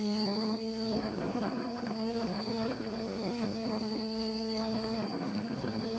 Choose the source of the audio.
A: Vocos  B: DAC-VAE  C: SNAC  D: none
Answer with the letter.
C